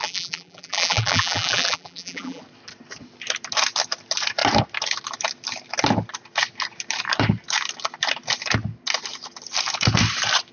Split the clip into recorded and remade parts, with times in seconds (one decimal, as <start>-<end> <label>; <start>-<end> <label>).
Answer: 0.0-2.4 remade; 2.4-10.5 recorded